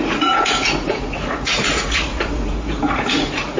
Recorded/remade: remade